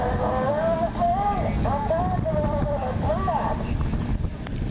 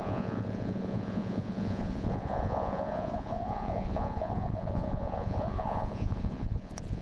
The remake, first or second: second